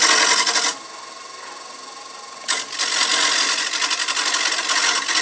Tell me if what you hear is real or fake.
real